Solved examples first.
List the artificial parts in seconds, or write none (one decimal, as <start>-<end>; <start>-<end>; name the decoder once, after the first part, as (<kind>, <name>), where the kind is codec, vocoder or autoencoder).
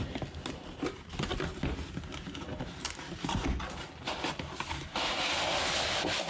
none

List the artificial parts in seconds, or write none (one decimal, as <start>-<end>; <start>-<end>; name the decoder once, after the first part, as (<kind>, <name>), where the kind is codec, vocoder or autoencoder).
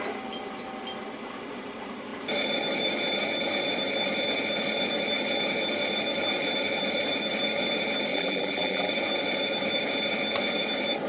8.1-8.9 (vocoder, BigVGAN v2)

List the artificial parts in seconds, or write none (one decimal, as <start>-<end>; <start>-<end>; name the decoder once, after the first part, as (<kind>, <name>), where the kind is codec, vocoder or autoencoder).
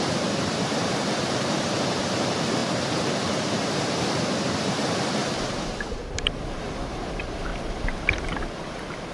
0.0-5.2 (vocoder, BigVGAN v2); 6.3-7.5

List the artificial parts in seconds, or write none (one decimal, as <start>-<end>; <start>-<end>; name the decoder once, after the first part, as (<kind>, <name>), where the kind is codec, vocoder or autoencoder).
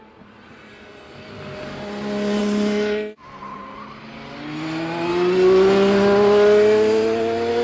none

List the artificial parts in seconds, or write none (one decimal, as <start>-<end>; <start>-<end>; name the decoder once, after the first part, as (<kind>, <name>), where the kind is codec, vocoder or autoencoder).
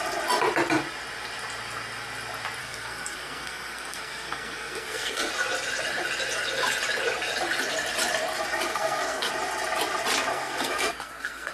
2.6-5.3 (codec, SNAC); 8.7-9.3; 10.3-11.5